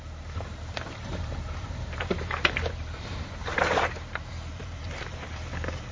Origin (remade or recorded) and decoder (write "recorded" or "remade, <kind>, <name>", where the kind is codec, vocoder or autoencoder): remade, vocoder, BigVGAN v2